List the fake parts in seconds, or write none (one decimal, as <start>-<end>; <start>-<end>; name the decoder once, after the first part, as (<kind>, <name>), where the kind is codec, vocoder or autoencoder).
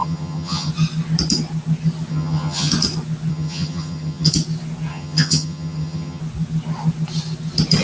0.0-0.7 (vocoder, HiFi-GAN); 2.1-2.7; 3.3-4.3; 4.9-6.2